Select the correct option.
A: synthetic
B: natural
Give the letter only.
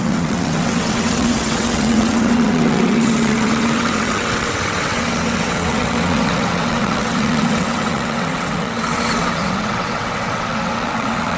A